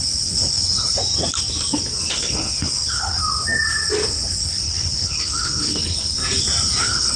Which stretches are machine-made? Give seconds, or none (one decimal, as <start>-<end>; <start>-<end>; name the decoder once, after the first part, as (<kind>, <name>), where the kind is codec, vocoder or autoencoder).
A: 0.0-1.0 (codec, HILCodec); 2.0-3.2; 4.4-6.2; 6.8-7.2